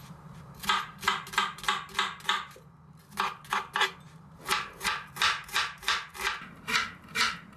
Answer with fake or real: real